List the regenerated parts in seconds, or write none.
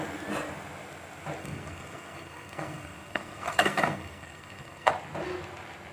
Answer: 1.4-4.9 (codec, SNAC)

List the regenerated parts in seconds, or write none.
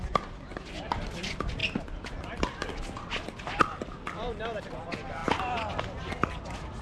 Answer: none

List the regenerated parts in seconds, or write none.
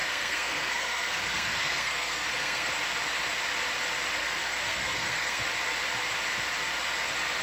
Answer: 0.0-2.7 (codec, SNAC); 4.2-5.4